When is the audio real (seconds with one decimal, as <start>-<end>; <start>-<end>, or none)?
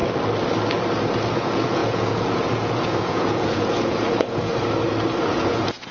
0.0-1.3; 4.5-5.3